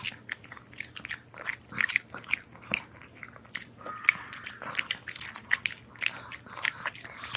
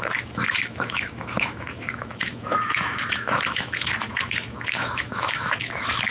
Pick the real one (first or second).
first